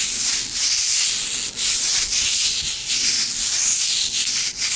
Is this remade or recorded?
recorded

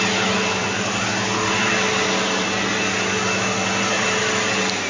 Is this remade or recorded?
recorded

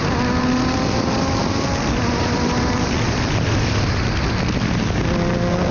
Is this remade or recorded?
recorded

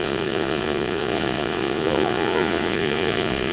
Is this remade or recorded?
remade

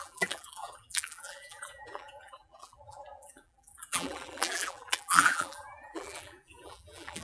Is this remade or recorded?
remade